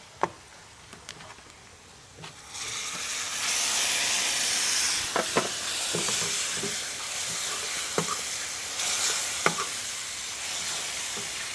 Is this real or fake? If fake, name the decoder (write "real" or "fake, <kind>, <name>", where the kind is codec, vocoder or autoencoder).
real